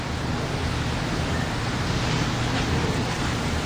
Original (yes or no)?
yes